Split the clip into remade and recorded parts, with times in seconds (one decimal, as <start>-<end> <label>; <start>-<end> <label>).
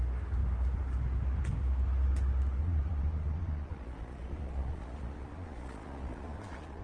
0.0-2.6 recorded; 2.6-6.8 remade